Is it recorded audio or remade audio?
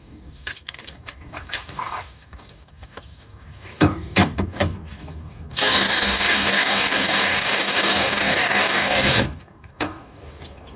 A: remade